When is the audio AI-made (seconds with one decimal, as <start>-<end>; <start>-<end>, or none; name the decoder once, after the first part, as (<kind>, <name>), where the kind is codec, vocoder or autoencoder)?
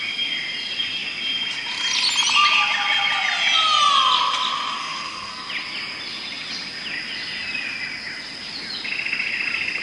4.8-5.4 (codec, SNAC)